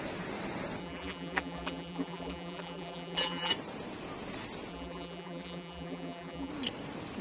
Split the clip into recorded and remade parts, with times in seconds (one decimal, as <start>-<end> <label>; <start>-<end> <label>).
0.0-0.8 recorded; 0.8-3.5 remade; 3.5-4.7 recorded; 4.7-6.5 remade; 6.5-7.2 recorded